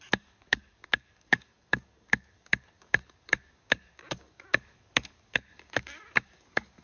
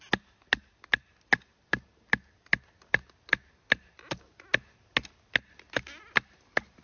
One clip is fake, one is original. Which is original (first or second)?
second